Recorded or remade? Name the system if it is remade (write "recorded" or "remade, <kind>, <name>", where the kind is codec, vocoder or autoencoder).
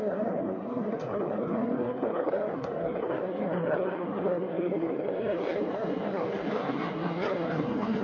remade, codec, SNAC